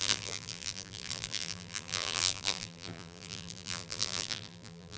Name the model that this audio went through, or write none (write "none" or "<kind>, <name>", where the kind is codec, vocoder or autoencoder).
vocoder, BigVGAN v2